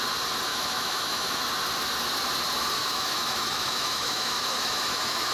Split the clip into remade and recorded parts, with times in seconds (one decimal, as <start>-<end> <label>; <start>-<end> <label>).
0.0-0.5 recorded; 0.5-1.4 remade; 1.4-2.8 recorded; 2.8-5.3 remade